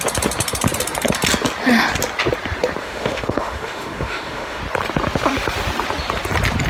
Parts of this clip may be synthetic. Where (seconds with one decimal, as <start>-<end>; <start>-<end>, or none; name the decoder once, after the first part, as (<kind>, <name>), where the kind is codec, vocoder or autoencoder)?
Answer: 2.8-4.6 (autoencoder, DAC-VAE)